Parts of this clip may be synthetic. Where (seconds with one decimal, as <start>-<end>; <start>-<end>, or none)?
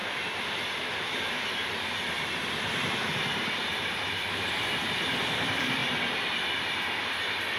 0.0-5.8; 7.0-7.6